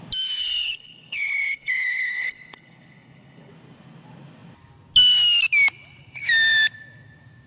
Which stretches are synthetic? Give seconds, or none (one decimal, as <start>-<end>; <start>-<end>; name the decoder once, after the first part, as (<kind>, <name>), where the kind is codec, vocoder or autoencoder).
0.4-3.5 (codec, HILCodec)